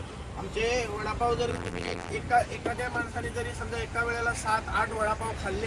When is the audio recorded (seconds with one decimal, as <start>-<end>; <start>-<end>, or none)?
0.0-1.5; 2.1-5.7